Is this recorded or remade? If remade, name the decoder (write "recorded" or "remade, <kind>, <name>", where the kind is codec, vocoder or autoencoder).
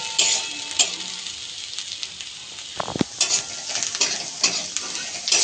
recorded